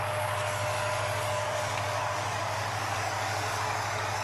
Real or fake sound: fake